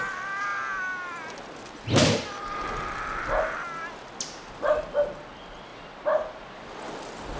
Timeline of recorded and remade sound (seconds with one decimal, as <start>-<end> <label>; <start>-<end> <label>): 0.0-7.4 recorded